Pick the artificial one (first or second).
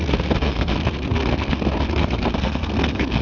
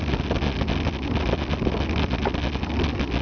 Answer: first